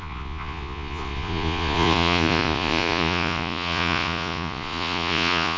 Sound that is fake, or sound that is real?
fake